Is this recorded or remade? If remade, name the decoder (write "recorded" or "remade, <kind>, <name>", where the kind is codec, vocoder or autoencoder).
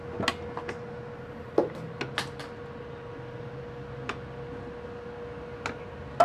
recorded